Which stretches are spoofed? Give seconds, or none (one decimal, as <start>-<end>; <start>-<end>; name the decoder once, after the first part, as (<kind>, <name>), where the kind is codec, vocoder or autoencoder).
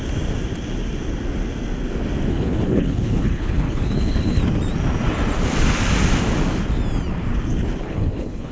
2.3-4.4 (codec, HILCodec); 7.8-8.5